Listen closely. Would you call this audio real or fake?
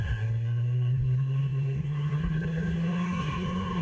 fake